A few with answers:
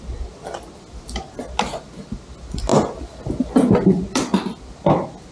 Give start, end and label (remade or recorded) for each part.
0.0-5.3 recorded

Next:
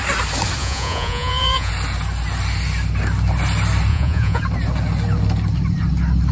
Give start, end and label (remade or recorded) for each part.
0.0-0.6 recorded; 0.6-1.7 remade; 1.7-3.9 recorded; 3.9-4.4 remade; 4.4-6.3 recorded

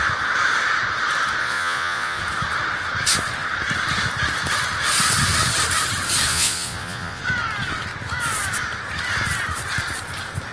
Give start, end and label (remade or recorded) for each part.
0.0-1.4 recorded; 1.4-2.2 remade; 2.2-6.3 recorded; 6.3-7.2 remade; 7.2-10.5 recorded

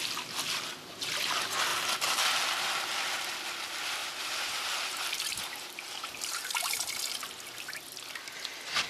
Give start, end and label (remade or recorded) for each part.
0.0-4.0 recorded; 4.0-6.9 remade; 6.9-8.9 recorded

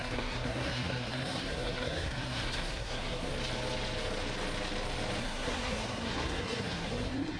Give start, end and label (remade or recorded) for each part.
0.0-3.3 remade; 3.3-5.2 recorded; 5.2-7.4 remade

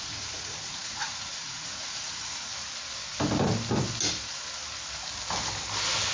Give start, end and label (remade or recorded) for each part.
0.0-2.5 remade; 2.5-6.1 recorded

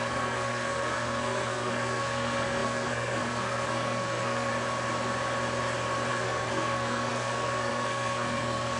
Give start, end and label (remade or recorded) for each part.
0.0-4.5 remade; 4.5-6.1 recorded; 6.1-8.8 remade

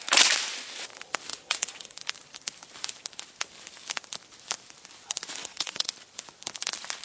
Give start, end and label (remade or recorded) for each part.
0.0-1.3 recorded; 1.3-2.0 remade; 2.0-5.4 recorded; 5.4-5.9 remade; 5.9-7.0 recorded